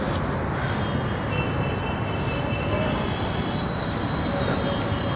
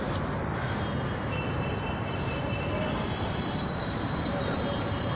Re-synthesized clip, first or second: second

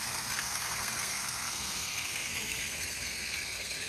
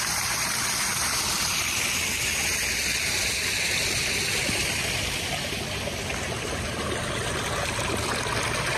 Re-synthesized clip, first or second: first